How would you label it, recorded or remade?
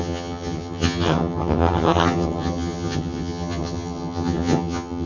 remade